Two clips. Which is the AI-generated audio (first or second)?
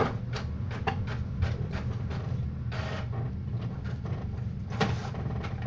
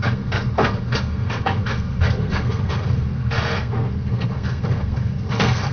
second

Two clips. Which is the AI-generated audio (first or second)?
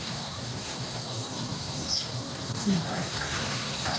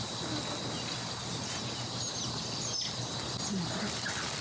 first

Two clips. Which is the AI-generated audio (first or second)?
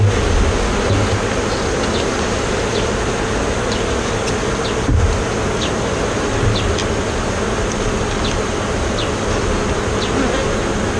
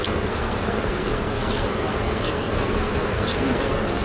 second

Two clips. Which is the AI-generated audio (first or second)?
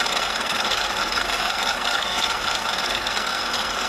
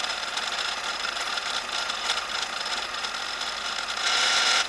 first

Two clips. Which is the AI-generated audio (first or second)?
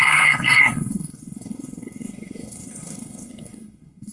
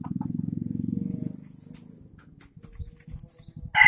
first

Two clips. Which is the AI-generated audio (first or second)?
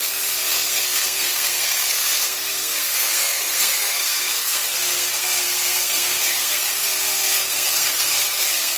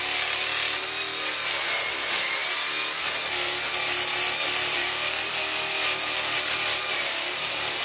first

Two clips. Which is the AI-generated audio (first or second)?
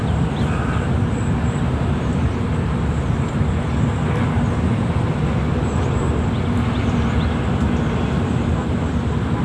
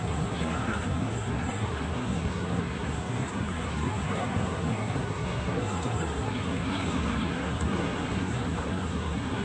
second